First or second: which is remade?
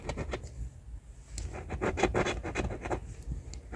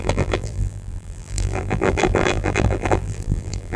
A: second